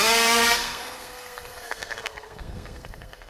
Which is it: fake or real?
fake